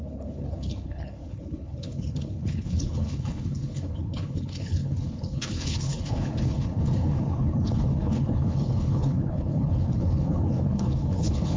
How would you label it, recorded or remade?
remade